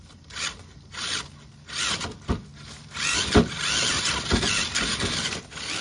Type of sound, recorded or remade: recorded